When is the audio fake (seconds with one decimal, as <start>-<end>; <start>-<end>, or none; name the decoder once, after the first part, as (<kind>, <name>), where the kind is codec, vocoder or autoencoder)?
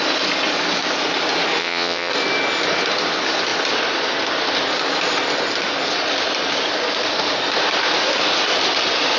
1.6-2.1 (vocoder, WaveNeXt)